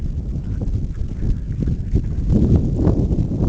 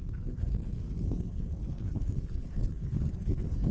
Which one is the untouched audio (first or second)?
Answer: first